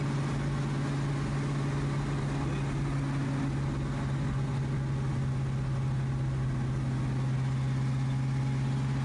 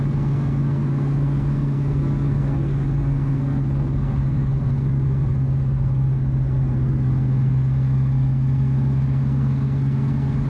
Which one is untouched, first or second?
first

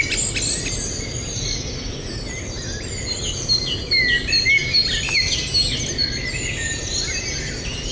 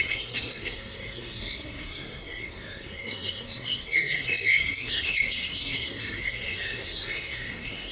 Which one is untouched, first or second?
first